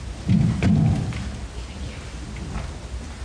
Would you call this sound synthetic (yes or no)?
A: no